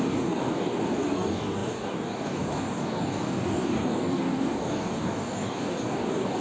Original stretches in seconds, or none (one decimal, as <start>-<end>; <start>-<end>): none